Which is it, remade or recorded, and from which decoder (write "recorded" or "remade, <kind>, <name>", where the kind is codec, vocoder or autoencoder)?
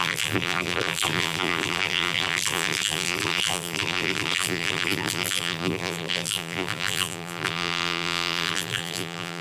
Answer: remade, vocoder, BigVGAN v2